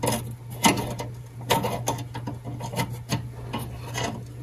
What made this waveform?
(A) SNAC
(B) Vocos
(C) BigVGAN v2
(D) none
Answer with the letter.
D